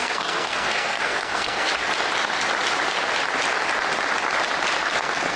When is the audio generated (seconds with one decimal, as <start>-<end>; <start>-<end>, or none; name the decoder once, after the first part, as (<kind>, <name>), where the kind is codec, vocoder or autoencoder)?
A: 0.0-1.7 (codec, SNAC); 4.9-5.4